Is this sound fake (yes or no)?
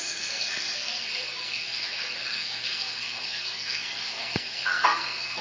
yes